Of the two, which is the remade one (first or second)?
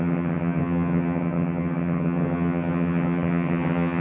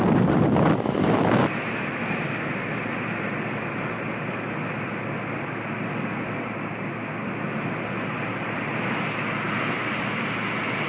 first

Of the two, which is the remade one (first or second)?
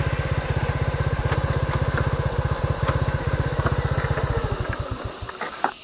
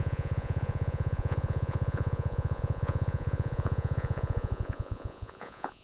second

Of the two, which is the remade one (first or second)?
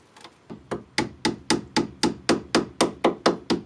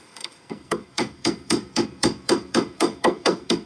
second